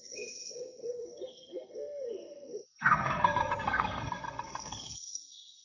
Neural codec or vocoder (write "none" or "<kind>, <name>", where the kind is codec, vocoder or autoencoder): codec, SNAC